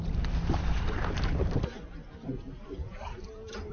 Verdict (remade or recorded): remade